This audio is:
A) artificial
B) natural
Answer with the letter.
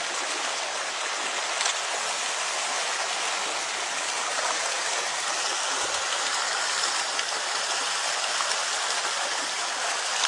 B